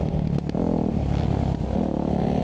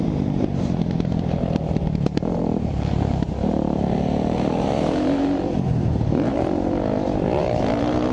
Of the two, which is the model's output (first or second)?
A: second